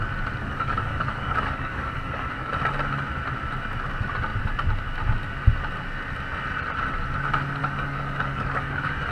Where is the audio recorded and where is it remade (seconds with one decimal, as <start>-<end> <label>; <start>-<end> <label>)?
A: 0.0-0.4 recorded; 0.4-2.5 remade; 2.5-7.6 recorded; 7.6-9.1 remade